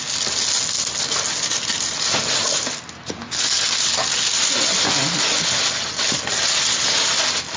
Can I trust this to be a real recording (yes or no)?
yes